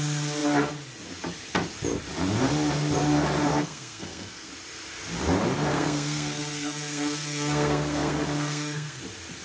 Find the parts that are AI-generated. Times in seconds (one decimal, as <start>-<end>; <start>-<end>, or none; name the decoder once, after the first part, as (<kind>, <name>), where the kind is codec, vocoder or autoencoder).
3.5-4.5 (codec, SNAC); 5.7-9.0